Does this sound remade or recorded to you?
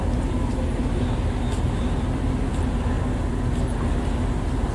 recorded